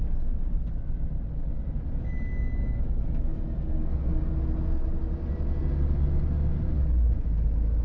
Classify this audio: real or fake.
real